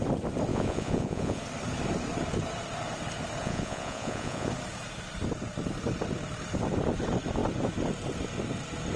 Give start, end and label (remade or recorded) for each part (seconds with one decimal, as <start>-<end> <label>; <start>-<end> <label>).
0.0-0.5 recorded; 0.5-1.4 remade; 1.4-3.4 recorded; 3.4-4.5 remade; 4.5-9.0 recorded

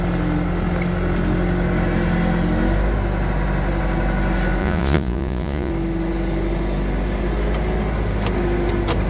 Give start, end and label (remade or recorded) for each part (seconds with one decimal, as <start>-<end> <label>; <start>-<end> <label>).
0.0-4.6 recorded; 4.6-5.7 remade; 5.7-9.1 recorded

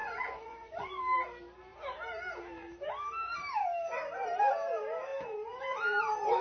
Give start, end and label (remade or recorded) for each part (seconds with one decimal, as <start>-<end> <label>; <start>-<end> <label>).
0.0-1.0 remade; 1.0-6.4 recorded

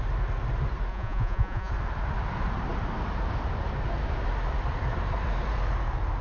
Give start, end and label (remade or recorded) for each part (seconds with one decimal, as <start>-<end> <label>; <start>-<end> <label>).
0.0-0.9 recorded; 0.9-1.7 remade; 1.7-6.2 recorded